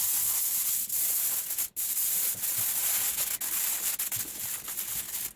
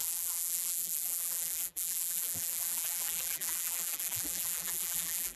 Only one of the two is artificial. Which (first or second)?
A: second